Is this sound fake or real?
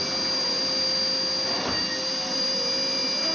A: real